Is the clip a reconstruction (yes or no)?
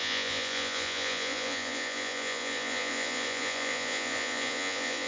yes